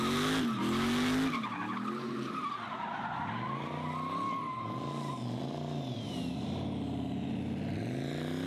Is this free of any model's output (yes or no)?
yes